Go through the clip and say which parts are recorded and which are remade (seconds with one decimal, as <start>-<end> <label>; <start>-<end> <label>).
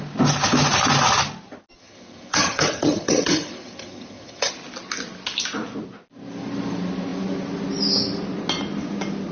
0.0-1.7 recorded; 1.7-4.5 remade; 4.5-9.3 recorded